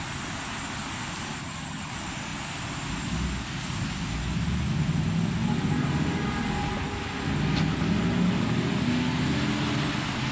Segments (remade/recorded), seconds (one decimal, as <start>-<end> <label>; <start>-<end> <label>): 0.0-1.4 recorded; 1.4-1.9 remade; 1.9-10.3 recorded